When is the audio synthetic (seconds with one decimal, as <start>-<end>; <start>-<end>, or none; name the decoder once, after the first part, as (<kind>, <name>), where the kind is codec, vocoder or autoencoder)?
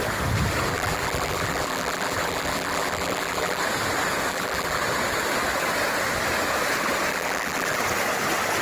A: 0.7-3.6 (vocoder, BigVGAN v2); 4.3-4.8; 7.1-7.8